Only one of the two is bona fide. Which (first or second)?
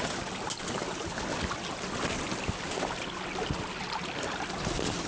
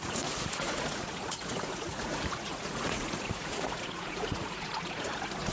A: first